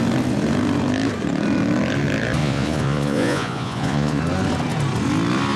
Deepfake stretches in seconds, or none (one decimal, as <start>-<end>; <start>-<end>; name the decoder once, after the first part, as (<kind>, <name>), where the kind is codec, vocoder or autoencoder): 2.4-4.2 (vocoder, Vocos)